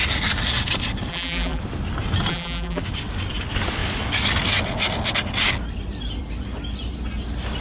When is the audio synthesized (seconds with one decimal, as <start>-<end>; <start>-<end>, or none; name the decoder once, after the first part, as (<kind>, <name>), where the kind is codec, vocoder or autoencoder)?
1.1-1.6 (vocoder, BigVGAN v2); 2.3-2.8